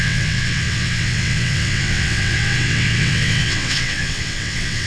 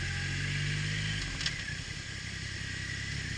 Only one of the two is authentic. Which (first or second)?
second